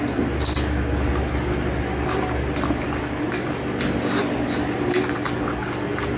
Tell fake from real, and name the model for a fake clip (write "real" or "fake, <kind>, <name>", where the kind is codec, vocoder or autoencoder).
real